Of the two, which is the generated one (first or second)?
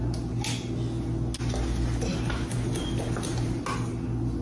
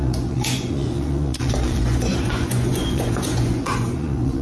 second